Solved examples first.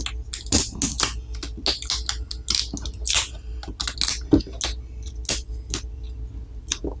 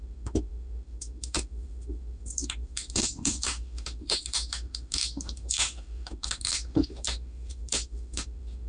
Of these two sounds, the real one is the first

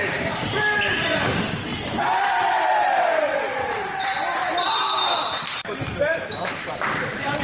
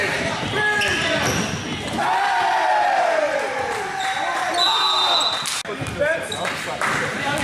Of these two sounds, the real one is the second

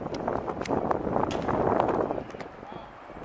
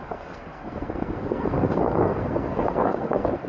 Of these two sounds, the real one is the first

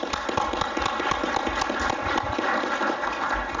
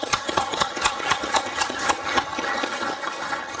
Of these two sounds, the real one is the first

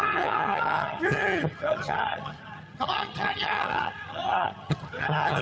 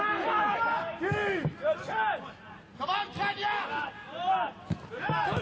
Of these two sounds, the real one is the second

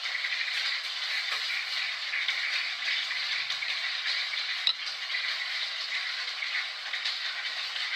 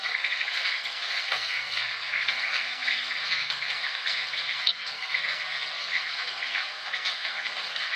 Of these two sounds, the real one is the first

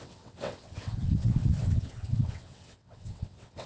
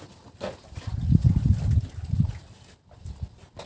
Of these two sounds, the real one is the second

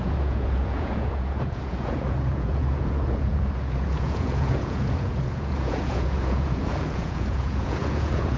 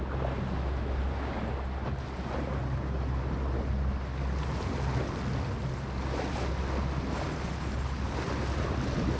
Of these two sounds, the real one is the second